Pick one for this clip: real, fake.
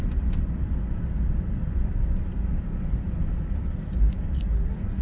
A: real